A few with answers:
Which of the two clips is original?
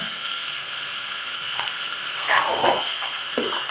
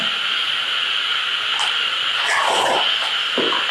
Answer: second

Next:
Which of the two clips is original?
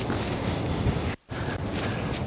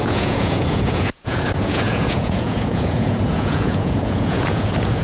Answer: first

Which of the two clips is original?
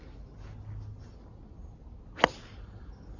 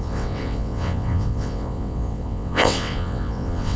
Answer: first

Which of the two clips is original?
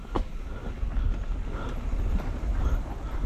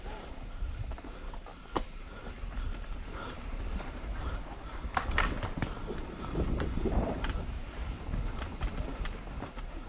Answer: first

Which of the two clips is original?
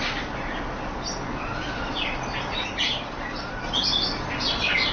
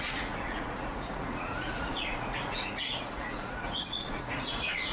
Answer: first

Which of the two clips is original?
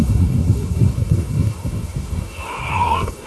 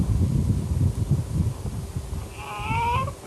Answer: second